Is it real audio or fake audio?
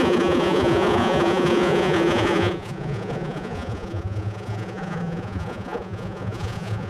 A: fake